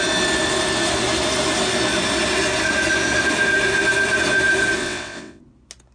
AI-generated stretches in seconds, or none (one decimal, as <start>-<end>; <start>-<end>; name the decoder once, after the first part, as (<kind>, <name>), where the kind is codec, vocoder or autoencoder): 4.8-5.4 (vocoder, WaveNeXt)